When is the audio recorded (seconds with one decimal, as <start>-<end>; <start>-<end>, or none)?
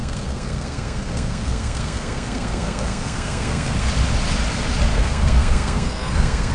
3.9-4.9